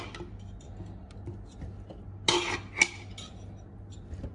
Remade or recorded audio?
recorded